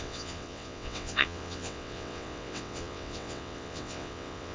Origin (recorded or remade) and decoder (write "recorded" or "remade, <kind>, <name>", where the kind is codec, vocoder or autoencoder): remade, vocoder, WaveNeXt